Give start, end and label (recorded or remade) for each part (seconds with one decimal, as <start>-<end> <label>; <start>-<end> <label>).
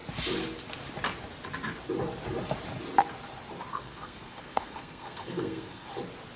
0.0-3.7 recorded; 3.7-5.9 remade; 5.9-6.4 recorded